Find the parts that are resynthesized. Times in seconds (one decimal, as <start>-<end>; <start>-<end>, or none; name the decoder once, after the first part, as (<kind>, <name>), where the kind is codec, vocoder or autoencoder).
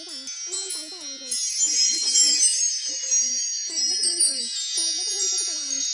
1.5-4.4 (autoencoder, DAC-VAE)